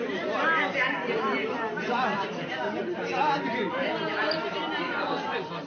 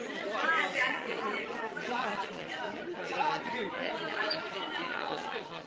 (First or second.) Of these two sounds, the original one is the first